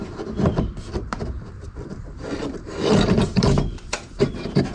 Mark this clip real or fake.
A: fake